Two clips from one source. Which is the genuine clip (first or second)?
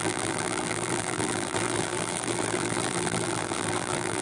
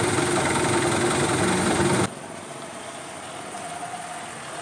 second